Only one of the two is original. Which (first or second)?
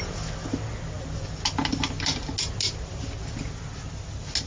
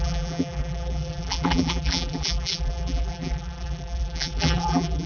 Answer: first